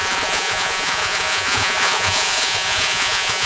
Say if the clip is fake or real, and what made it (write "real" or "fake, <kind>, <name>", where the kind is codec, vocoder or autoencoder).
fake, vocoder, Vocos